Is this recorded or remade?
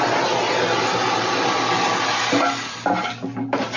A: recorded